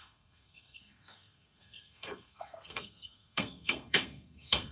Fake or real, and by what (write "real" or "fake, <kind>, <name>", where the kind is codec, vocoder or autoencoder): fake, codec, SNAC